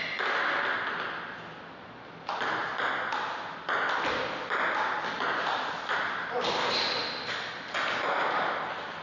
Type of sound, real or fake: real